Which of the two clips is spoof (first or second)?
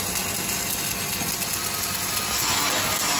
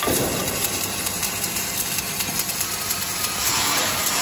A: second